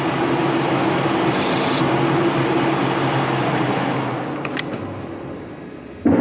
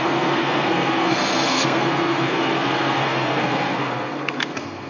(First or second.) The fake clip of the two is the second